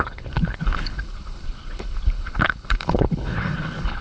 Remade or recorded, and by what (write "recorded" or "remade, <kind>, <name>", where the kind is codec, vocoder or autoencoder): remade, codec, HILCodec